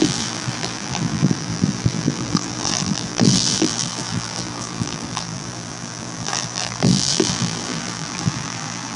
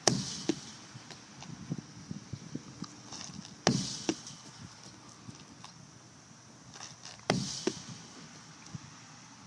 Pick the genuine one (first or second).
second